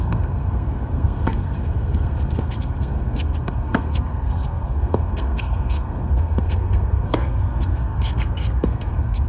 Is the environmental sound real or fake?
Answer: fake